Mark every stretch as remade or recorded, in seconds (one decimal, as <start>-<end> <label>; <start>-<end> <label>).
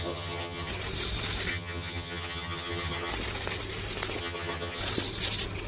0.0-0.7 remade; 0.7-1.5 recorded; 1.5-3.1 remade; 3.1-4.2 recorded; 4.2-4.8 remade; 4.8-5.7 recorded